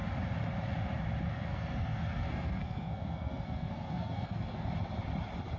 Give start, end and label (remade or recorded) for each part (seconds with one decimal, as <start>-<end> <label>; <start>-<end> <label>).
0.0-1.3 recorded; 1.3-4.7 remade; 4.7-5.6 recorded